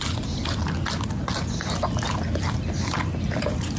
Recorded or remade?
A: recorded